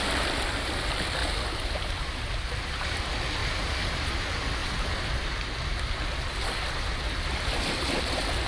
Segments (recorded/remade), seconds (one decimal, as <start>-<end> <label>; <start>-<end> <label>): 0.0-1.2 recorded; 1.2-3.0 remade; 3.0-3.4 recorded; 3.4-4.1 remade; 4.1-4.6 recorded; 4.6-5.2 remade; 5.2-6.1 recorded; 6.1-8.5 remade